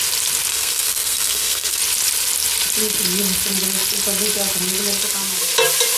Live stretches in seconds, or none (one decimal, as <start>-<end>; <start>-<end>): 0.0-0.5; 1.8-6.0